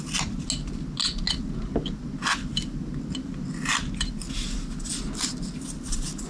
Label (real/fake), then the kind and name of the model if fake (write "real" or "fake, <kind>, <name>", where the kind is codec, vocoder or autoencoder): real